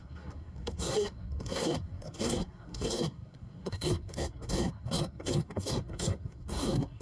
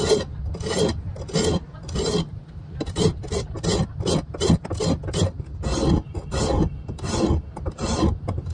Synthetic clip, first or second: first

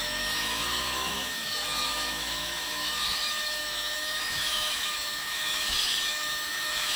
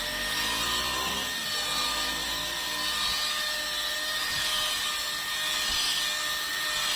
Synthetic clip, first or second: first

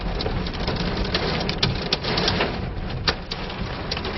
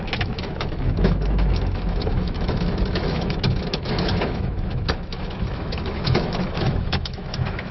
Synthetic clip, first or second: second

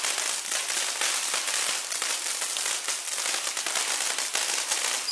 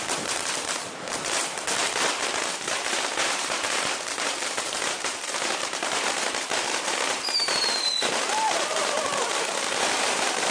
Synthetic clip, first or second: second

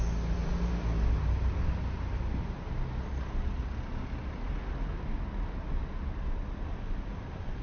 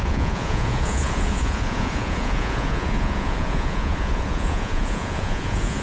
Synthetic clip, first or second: second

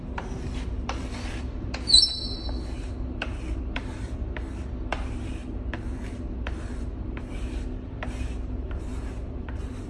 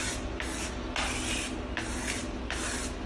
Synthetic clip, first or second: first